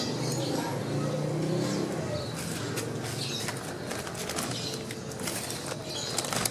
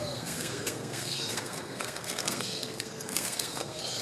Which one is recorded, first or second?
first